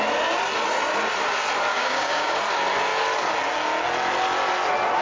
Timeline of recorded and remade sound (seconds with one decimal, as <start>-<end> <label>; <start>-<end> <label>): 0.0-1.7 recorded; 1.7-2.4 remade; 2.4-5.0 recorded